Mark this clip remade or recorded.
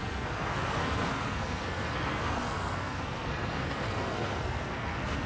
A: remade